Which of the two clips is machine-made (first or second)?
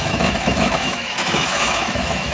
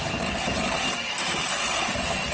first